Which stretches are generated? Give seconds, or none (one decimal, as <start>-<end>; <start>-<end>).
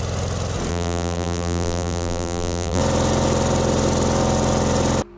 0.7-2.8